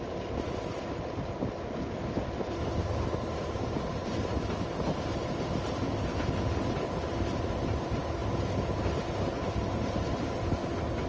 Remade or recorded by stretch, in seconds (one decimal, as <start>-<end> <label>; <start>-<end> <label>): 0.0-11.1 recorded